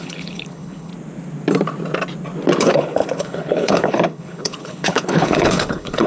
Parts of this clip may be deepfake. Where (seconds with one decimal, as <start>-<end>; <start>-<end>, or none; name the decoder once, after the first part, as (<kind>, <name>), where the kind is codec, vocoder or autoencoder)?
0.0-0.9 (codec, HILCodec); 2.6-6.1